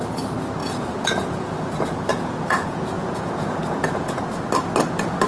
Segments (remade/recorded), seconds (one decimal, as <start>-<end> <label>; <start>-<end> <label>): 0.0-0.6 recorded; 0.6-1.7 remade; 1.7-2.1 recorded; 2.1-4.2 remade; 4.2-5.3 recorded